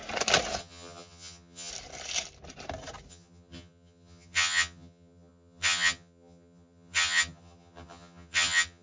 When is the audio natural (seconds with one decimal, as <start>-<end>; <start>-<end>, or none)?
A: 0.0-0.6; 1.7-3.1